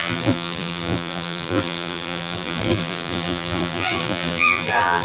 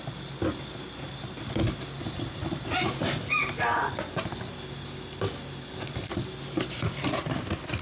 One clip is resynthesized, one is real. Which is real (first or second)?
second